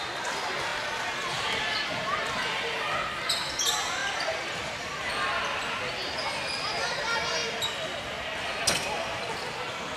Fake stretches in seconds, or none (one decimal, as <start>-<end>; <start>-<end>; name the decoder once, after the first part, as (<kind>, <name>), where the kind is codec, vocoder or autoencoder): 4.0-5.1 (vocoder, BigVGAN v2); 6.2-6.8